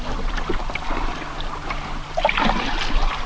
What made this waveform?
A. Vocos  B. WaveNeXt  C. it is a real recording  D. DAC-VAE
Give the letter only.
C